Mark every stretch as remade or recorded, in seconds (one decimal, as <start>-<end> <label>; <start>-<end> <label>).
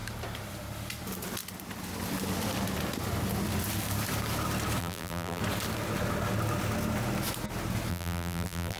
0.0-4.8 recorded; 4.8-5.4 remade; 5.4-7.9 recorded; 7.9-8.8 remade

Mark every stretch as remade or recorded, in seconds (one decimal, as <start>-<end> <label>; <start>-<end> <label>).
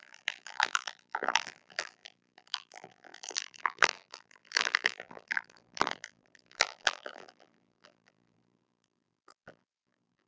0.0-10.3 remade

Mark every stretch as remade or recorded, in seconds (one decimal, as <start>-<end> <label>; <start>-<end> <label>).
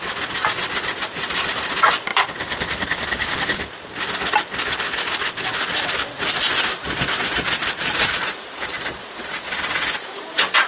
0.0-7.6 recorded; 7.6-8.9 remade; 8.9-10.7 recorded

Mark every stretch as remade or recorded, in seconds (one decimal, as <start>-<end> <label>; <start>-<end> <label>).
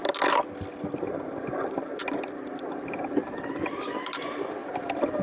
0.0-4.6 recorded; 4.6-5.2 remade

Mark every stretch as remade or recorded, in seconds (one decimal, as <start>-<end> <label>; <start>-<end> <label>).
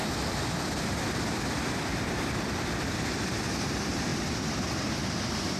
0.0-5.6 remade